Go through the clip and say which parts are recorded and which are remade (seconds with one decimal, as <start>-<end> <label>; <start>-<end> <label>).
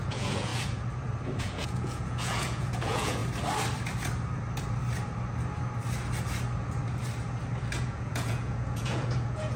0.0-0.5 remade; 0.5-1.4 recorded; 1.4-3.2 remade; 3.2-7.8 recorded; 7.8-9.6 remade